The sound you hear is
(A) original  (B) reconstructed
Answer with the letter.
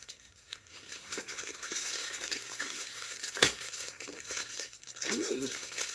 B